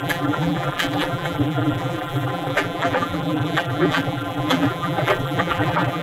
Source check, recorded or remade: remade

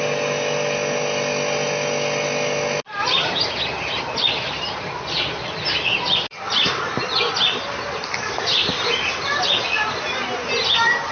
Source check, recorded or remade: recorded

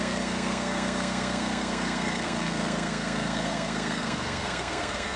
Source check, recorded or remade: remade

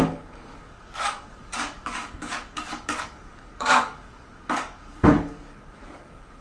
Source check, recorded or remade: remade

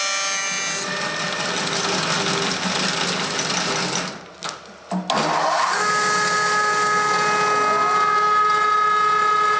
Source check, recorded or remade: recorded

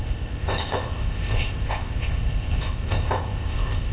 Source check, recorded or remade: remade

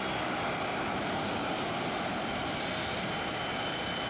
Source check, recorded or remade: recorded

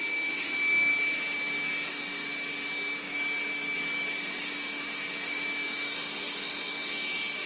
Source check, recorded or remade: remade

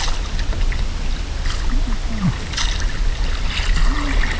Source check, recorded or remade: recorded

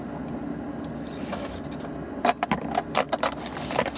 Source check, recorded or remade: recorded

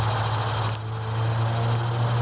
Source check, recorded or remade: recorded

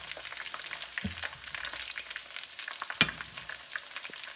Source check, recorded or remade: recorded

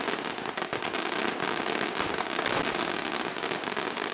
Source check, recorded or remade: recorded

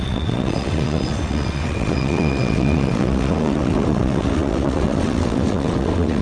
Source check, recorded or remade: remade